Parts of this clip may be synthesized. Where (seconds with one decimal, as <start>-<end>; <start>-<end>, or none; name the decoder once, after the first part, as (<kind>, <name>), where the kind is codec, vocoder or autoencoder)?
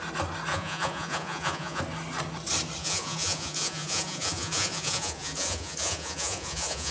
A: 0.5-1.8 (vocoder, Vocos); 2.8-6.9